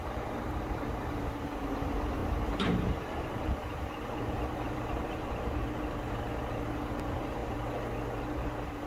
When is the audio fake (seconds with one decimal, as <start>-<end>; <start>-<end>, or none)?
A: 0.0-7.4; 8.2-8.9